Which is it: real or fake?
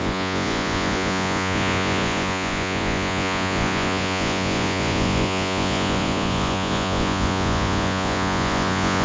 fake